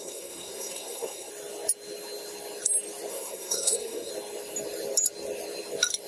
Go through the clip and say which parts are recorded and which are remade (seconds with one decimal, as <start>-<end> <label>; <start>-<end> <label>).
0.0-1.3 remade; 1.3-3.1 recorded; 3.1-4.1 remade; 4.1-6.1 recorded